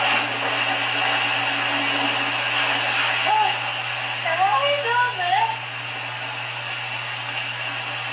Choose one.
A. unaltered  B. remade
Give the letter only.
A